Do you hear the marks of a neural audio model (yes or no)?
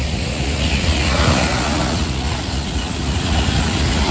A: yes